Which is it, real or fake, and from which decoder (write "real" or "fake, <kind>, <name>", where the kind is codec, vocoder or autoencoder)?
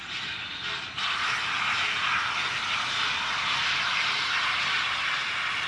real